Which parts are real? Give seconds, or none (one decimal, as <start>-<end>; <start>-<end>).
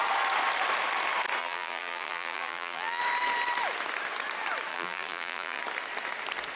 0.0-1.4; 3.0-4.7; 5.6-6.6